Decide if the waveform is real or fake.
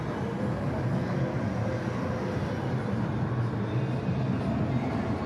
real